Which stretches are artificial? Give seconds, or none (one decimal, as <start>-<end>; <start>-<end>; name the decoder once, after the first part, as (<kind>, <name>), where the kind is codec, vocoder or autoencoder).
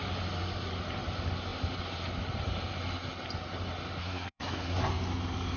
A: 4.0-4.8 (codec, SNAC)